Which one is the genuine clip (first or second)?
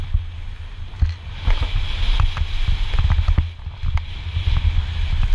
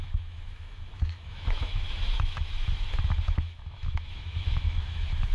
first